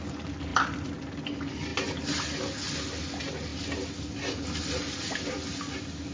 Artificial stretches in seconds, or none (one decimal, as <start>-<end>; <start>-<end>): 0.5-1.1; 3.5-4.1